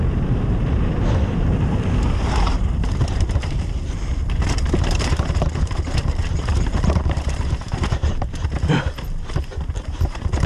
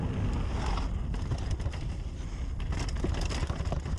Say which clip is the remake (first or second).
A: first